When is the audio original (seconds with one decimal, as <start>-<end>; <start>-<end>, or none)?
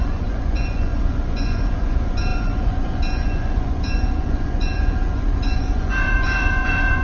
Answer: none